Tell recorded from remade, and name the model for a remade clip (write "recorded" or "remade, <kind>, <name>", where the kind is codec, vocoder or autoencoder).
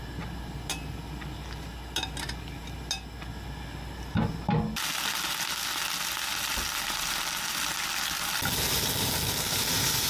recorded